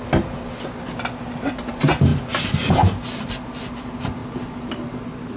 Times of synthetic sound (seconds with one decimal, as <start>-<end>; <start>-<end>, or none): none

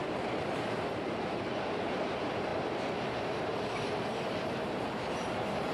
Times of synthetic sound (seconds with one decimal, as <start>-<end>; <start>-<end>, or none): 0.0-5.7

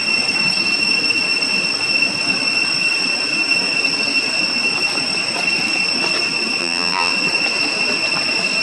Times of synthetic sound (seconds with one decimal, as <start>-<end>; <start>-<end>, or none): 6.6-7.1

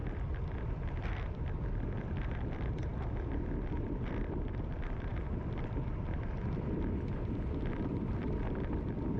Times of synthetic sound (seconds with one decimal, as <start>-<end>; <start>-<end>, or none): 0.0-2.9; 3.7-9.2

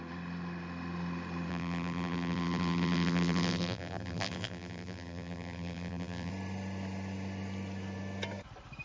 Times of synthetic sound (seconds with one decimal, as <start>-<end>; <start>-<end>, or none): 1.5-6.3

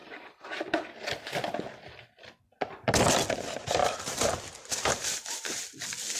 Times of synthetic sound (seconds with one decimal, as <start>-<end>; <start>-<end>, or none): 3.8-5.6